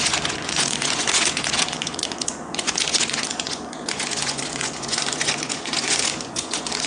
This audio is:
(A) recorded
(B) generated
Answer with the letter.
B